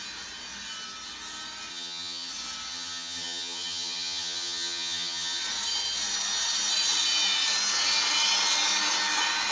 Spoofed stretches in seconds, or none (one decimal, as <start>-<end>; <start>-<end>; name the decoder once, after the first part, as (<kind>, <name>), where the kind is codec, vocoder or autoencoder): 1.7-2.3 (vocoder, HiFi-GAN); 2.7-5.4